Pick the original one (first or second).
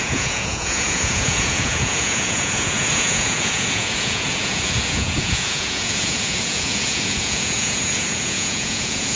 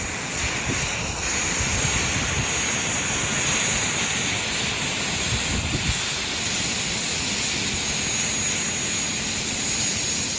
second